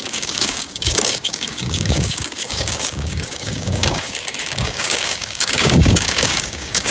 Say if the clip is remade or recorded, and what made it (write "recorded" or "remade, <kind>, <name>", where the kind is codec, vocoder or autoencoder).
remade, codec, DAC